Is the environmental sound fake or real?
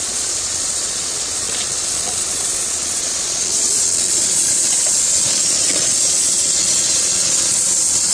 fake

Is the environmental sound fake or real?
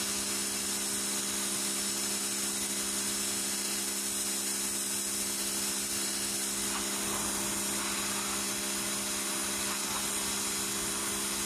real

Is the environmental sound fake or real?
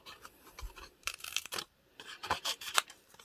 fake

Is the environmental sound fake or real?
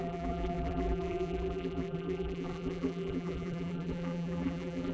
fake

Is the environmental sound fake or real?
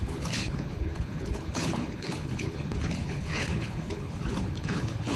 fake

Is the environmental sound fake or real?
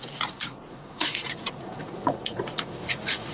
fake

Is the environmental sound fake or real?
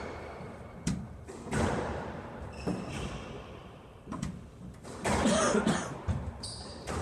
fake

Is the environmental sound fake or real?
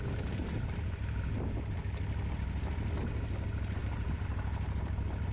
real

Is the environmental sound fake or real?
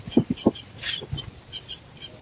real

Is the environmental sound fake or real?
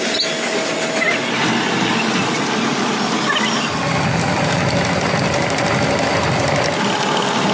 real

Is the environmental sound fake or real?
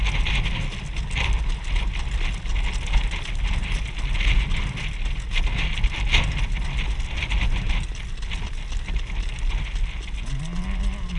real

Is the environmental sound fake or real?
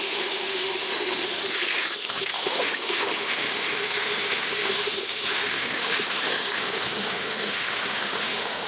fake